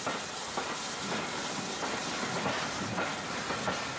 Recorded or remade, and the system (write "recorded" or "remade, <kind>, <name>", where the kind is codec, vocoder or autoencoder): recorded